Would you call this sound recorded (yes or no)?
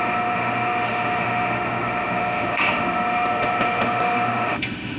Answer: no